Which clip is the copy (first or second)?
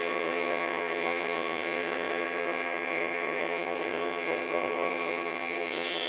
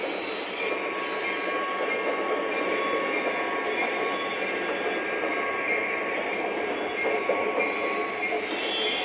first